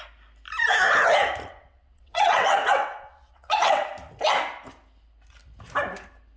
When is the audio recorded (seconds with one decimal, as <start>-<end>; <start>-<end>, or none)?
0.0-1.5; 3.9-6.4